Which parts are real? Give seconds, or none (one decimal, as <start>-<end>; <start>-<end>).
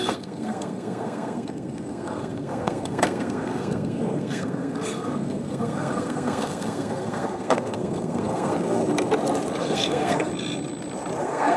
8.8-9.6; 10.3-11.2